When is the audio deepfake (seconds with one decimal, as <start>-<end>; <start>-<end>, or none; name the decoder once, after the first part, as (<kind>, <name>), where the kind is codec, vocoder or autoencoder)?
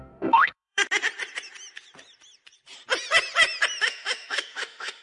0.0-0.8 (autoencoder, DAC-VAE); 3.8-5.0